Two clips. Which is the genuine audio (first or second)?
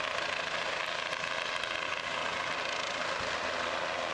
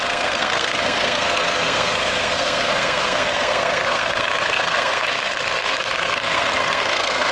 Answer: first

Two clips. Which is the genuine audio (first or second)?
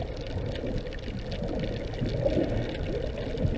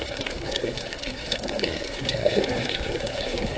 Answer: first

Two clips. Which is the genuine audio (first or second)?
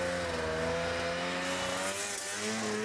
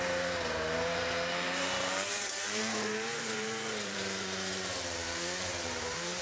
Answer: first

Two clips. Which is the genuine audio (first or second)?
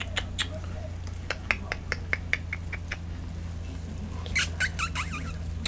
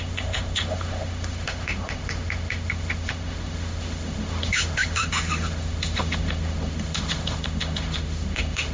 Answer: first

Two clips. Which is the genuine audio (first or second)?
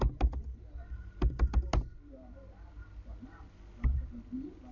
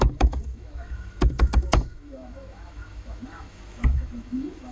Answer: first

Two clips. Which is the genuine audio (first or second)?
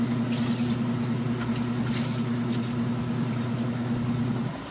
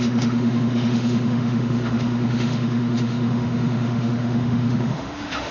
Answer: first